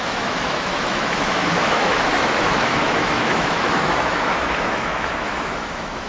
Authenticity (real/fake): fake